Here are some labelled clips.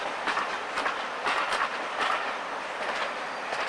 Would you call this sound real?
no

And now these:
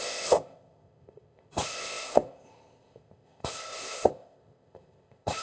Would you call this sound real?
no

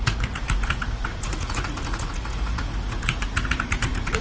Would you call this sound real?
no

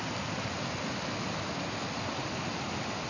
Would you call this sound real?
yes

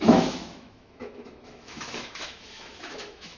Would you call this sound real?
no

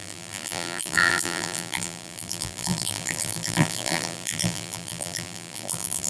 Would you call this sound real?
no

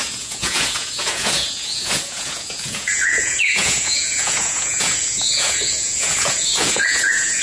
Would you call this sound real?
no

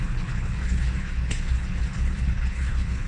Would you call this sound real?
no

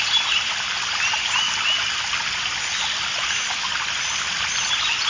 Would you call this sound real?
yes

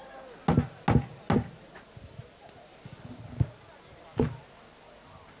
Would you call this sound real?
yes